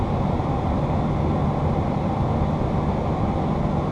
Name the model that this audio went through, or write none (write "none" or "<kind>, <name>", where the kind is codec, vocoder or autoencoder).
none